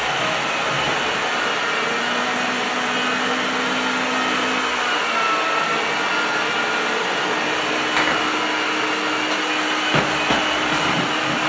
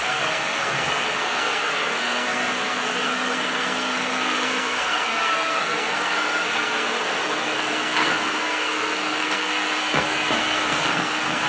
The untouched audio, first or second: first